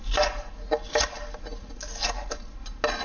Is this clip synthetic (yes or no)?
no